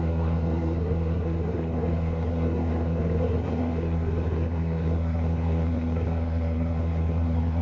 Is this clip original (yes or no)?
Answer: no